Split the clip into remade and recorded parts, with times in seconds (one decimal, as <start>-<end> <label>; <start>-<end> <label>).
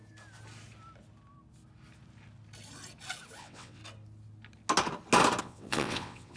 0.0-3.4 recorded; 3.4-3.8 remade; 3.8-5.4 recorded; 5.4-6.4 remade